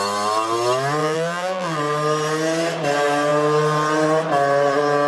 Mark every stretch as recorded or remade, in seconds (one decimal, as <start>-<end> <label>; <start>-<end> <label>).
0.0-1.0 recorded; 1.0-1.8 remade; 1.8-5.1 recorded